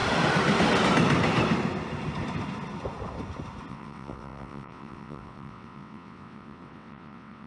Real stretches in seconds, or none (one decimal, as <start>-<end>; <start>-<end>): 0.0-3.7